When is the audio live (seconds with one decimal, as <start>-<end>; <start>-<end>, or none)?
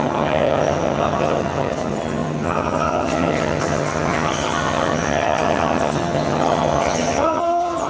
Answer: none